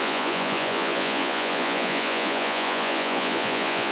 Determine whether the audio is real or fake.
fake